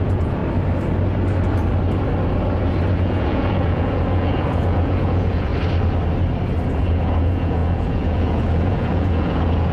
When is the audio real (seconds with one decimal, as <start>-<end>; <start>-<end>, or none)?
0.4-2.9; 5.5-6.8